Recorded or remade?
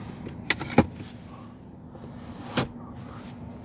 recorded